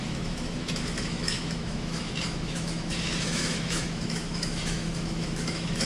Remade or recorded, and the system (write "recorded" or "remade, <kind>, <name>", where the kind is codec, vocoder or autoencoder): remade, autoencoder, DAC-VAE